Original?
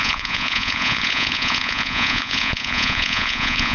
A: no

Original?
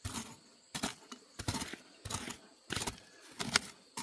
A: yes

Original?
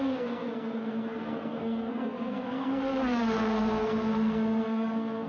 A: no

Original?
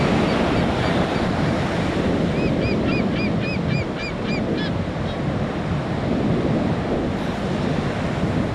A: yes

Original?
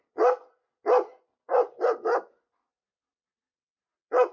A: yes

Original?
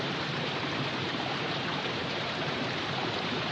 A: no